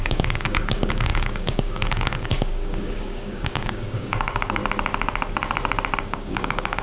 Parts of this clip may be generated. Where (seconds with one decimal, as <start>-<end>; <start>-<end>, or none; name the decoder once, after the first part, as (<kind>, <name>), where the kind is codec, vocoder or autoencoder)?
0.0-4.6 (codec, DAC); 6.0-6.8